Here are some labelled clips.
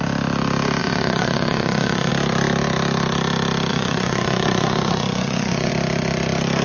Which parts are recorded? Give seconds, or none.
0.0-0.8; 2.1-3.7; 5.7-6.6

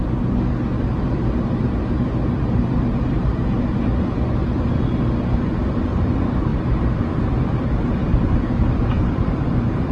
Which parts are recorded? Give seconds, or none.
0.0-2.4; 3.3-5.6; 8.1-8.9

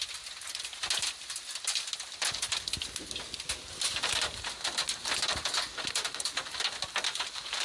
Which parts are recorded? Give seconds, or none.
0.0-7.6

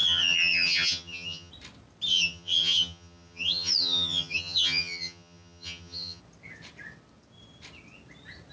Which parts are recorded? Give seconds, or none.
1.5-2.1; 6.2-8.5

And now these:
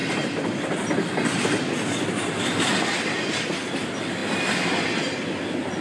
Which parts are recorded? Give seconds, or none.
0.0-5.8